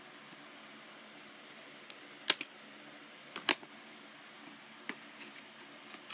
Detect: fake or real real